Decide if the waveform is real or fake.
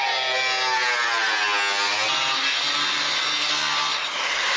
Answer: real